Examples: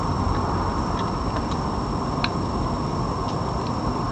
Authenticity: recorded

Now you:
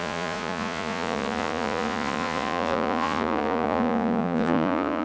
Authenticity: remade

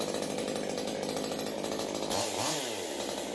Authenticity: recorded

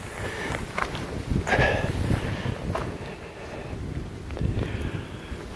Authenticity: recorded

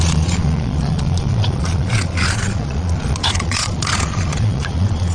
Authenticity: remade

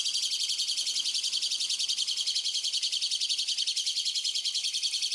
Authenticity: remade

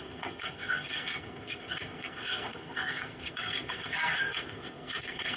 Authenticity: remade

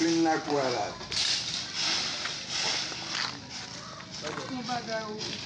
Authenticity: recorded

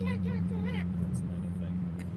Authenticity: remade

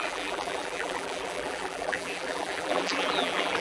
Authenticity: remade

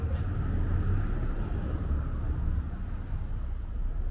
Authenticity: recorded